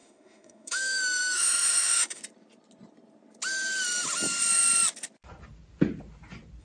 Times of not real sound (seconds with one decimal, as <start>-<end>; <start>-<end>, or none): 0.0-2.2